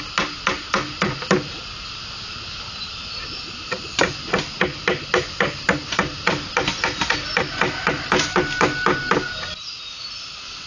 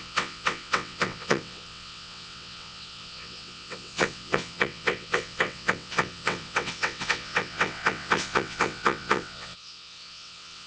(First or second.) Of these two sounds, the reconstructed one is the second